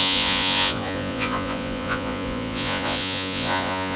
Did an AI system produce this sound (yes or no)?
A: yes